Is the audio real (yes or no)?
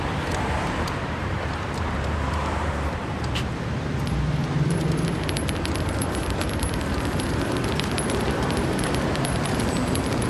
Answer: no